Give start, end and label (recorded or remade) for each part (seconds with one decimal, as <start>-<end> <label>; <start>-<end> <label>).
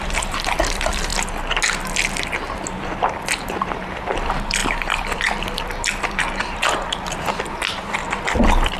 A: 0.0-1.1 remade; 1.1-3.1 recorded; 3.1-8.8 remade